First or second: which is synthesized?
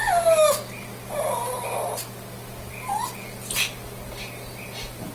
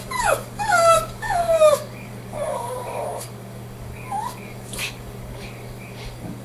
second